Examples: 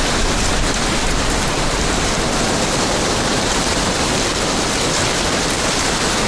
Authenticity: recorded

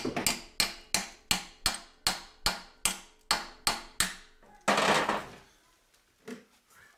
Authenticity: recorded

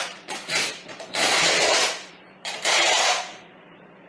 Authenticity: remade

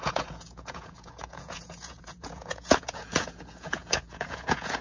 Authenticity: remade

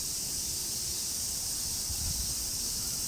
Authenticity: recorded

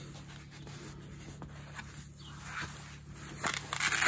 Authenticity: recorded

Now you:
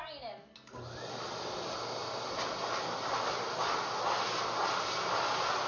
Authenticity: recorded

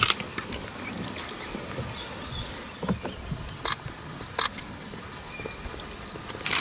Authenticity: recorded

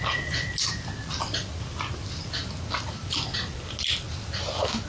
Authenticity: recorded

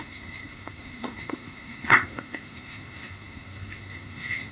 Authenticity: remade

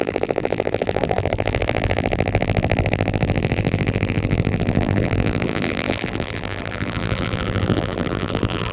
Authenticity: remade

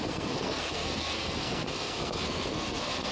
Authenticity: remade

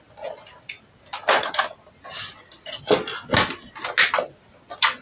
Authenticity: recorded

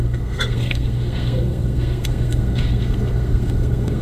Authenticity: remade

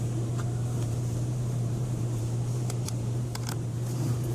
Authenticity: remade